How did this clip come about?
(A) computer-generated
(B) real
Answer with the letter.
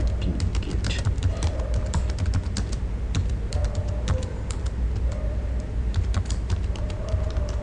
B